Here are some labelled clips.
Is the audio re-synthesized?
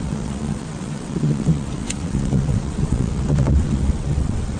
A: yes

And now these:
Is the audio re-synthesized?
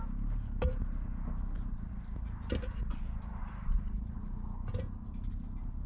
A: no